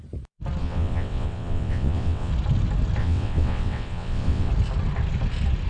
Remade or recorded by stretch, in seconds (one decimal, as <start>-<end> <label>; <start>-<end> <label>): 0.0-0.6 recorded; 0.6-2.3 remade; 2.3-3.0 recorded; 3.0-4.5 remade; 4.5-5.7 recorded